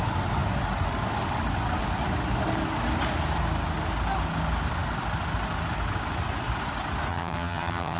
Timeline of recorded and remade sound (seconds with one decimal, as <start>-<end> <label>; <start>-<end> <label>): 0.0-7.1 recorded; 7.1-8.0 remade